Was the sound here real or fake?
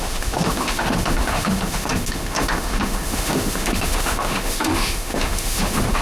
fake